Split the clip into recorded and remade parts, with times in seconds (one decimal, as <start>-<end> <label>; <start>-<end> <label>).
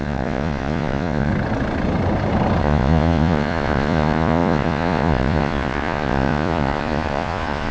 0.0-1.3 remade; 1.3-2.6 recorded; 2.6-7.7 remade